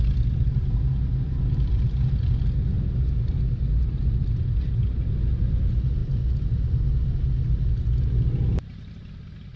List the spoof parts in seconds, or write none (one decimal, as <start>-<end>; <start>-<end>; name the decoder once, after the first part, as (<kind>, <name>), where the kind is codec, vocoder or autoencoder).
none

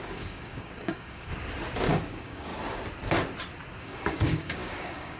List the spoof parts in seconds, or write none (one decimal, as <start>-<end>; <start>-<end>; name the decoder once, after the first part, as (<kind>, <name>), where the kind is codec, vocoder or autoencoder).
0.0-1.3 (codec, DAC); 1.9-2.5; 3.8-5.2

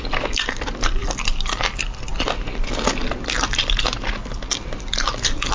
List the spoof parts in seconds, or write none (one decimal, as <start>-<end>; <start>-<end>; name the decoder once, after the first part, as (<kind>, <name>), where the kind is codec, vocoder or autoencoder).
none

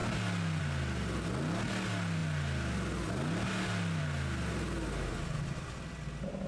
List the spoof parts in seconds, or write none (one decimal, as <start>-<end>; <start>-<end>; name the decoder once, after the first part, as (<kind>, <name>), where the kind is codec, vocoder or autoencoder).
none

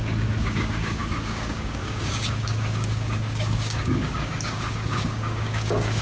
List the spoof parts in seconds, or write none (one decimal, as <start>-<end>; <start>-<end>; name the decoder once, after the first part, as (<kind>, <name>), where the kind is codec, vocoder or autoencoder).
0.0-6.0 (codec, DAC)

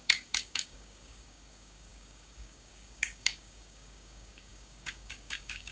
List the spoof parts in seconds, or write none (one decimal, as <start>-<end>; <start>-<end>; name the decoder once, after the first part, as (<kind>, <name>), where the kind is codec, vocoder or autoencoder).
0.0-5.7 (codec, DAC)

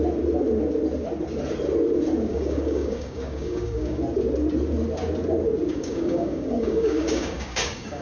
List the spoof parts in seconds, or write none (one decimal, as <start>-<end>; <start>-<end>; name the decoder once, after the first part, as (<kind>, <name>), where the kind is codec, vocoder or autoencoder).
2.3-4.0 (codec, DAC); 5.7-8.0